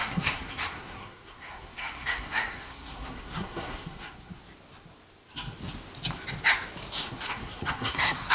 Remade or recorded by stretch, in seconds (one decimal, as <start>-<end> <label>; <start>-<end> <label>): 0.0-4.4 remade; 4.4-7.0 recorded; 7.0-8.3 remade